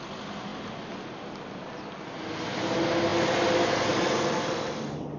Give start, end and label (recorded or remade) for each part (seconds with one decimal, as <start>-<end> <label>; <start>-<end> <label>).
0.0-5.2 recorded